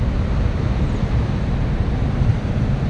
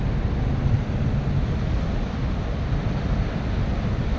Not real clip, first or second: first